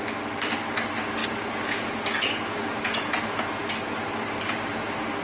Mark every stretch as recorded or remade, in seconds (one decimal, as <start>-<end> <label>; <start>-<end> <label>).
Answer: 0.0-1.2 recorded; 1.2-3.2 remade; 3.2-5.2 recorded